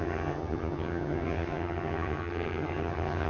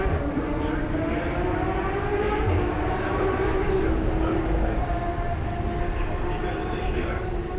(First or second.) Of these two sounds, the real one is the second